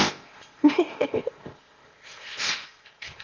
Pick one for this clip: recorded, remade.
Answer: remade